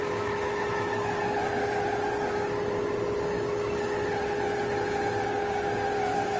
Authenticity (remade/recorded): recorded